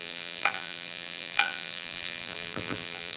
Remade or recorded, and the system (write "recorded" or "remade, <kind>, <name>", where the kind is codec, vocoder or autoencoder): remade, vocoder, BigVGAN v2